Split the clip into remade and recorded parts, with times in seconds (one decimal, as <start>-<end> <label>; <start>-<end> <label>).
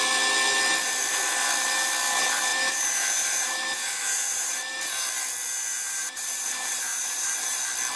0.0-2.5 recorded; 2.5-5.1 remade; 5.1-5.7 recorded; 5.7-7.6 remade; 7.6-8.0 recorded